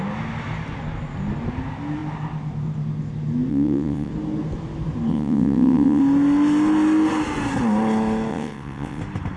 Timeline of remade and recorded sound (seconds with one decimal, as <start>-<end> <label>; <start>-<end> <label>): 0.0-3.5 recorded; 3.5-4.1 remade; 4.1-5.1 recorded; 5.1-6.0 remade; 6.0-8.3 recorded; 8.3-9.0 remade; 9.0-9.4 recorded